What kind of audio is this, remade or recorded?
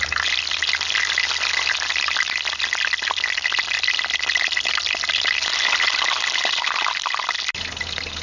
recorded